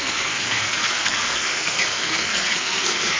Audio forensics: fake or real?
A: fake